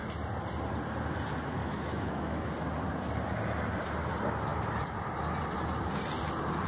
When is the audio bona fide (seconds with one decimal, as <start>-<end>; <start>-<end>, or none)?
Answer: 0.0-1.6; 2.5-6.7